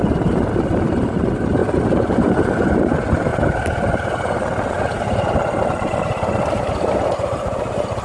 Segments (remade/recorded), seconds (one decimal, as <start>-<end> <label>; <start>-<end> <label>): 0.0-8.0 recorded